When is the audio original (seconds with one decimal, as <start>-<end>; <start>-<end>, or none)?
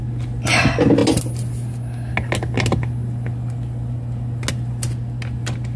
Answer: 0.0-5.8